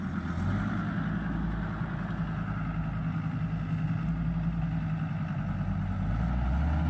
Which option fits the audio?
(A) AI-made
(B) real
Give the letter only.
B